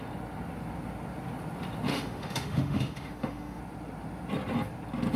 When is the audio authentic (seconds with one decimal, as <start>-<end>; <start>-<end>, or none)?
0.0-1.9; 3.6-5.2